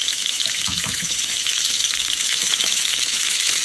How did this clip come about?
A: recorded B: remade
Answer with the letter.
B